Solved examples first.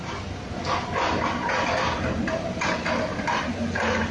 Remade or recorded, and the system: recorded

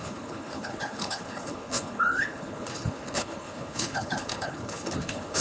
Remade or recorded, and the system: remade, codec, HILCodec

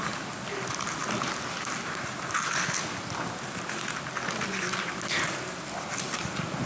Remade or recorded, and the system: recorded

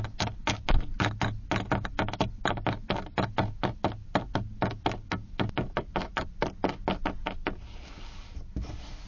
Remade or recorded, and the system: recorded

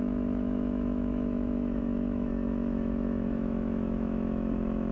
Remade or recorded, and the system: remade, autoencoder, DAC-VAE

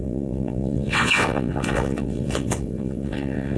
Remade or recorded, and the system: remade, vocoder, WaveNeXt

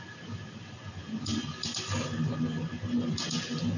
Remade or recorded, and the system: recorded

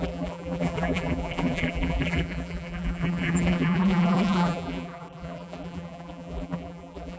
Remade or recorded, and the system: remade, vocoder, BigVGAN v2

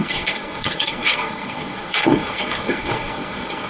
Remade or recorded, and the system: remade, codec, SNAC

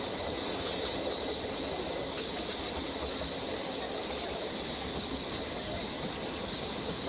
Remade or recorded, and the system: recorded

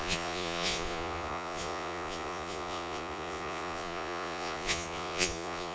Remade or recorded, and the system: remade, vocoder, Vocos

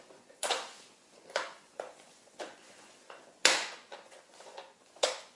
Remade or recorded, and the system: remade, vocoder, Vocos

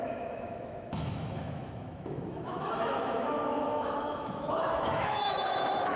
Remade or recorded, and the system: remade, autoencoder, DAC-VAE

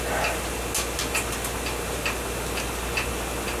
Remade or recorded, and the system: recorded